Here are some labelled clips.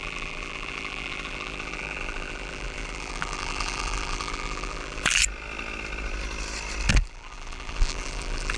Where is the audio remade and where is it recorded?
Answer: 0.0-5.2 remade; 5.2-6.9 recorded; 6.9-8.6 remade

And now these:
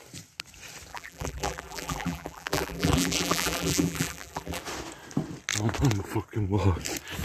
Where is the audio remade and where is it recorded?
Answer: 0.0-0.9 recorded; 0.9-4.6 remade; 4.6-7.2 recorded

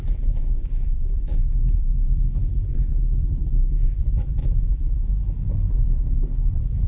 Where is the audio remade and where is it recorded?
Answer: 0.0-5.1 remade; 5.1-5.7 recorded; 5.7-6.9 remade

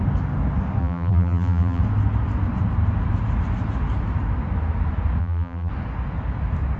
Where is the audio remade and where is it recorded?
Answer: 0.0-0.8 recorded; 0.8-1.8 remade; 1.8-5.2 recorded; 5.2-5.7 remade; 5.7-6.8 recorded

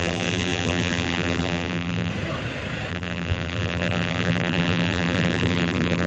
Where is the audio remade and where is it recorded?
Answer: 0.0-2.1 remade; 2.1-2.9 recorded; 2.9-6.1 remade

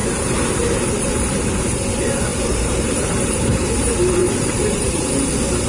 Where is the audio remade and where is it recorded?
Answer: 0.0-2.3 recorded; 2.3-3.7 remade; 3.7-4.2 recorded; 4.2-5.1 remade; 5.1-5.7 recorded